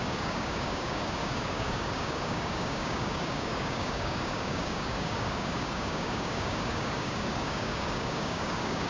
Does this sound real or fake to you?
fake